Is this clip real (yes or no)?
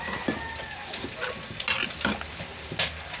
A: yes